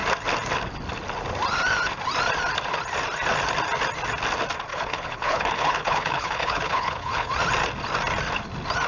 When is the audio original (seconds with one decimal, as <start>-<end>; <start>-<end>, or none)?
0.0-4.7; 7.3-8.9